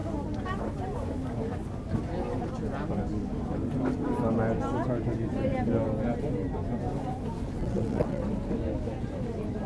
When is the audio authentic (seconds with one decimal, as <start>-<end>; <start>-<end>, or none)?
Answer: 0.0-7.6; 8.2-9.7